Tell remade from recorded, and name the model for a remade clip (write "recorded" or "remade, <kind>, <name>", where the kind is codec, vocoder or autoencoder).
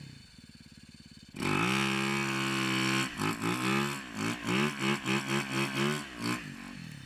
recorded